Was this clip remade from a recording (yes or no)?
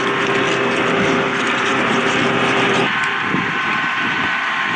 no